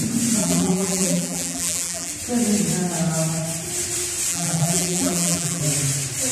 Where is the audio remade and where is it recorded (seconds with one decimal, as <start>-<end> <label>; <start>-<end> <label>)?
0.0-0.4 recorded; 0.4-2.1 remade; 2.1-4.3 recorded; 4.3-5.6 remade; 5.6-6.3 recorded